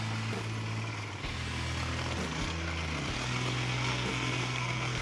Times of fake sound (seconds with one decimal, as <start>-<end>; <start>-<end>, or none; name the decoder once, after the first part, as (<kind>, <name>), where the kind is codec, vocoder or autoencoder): 3.9-5.0 (codec, SNAC)